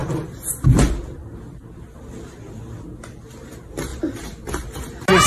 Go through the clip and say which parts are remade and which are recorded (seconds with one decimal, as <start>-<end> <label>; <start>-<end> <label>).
0.0-5.3 recorded